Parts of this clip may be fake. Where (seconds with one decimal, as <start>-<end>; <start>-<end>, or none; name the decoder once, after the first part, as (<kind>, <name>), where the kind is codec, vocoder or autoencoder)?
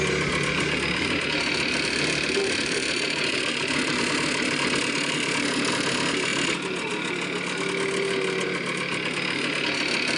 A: 2.4-5.7 (vocoder, BigVGAN v2); 6.3-6.9